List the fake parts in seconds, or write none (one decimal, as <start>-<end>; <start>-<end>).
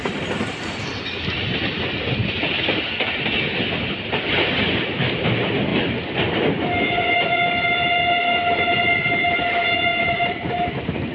9.9-10.5